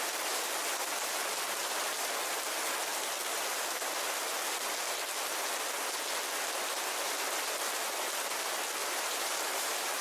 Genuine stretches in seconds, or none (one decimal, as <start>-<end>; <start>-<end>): 0.0-8.8

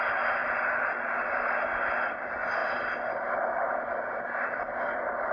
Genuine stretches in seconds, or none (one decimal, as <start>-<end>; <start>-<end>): 0.0-0.4; 1.4-2.6; 3.1-5.3

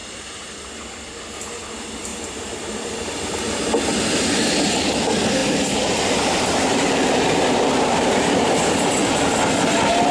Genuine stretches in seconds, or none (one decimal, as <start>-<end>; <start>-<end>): 0.6-2.1; 3.8-5.4; 8.5-10.1